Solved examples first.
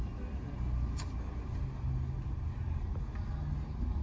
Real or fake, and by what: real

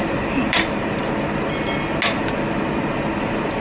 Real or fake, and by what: real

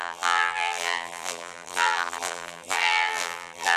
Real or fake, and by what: fake, vocoder, BigVGAN v2